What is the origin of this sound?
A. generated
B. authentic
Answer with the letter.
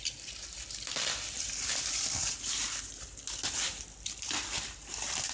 A